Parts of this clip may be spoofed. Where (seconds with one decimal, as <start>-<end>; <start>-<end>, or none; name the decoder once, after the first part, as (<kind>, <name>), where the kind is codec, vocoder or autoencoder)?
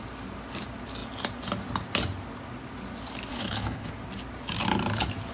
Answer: 3.3-3.9 (codec, HILCodec)